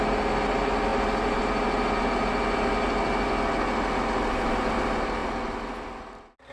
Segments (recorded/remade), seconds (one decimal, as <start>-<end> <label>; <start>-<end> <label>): 0.0-6.5 recorded